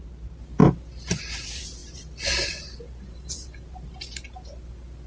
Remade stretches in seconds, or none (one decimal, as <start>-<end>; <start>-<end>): none